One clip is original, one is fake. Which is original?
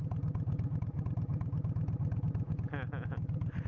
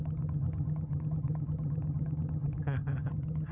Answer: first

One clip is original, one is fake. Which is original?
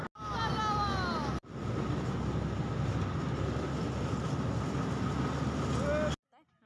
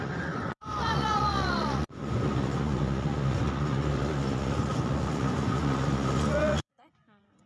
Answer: first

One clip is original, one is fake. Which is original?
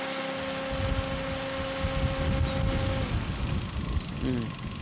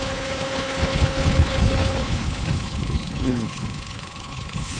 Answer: first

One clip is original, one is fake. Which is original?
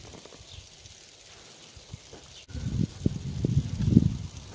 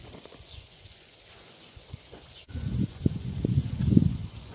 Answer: first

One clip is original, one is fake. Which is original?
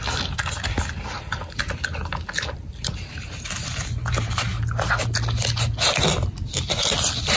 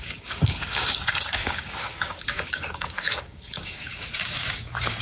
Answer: first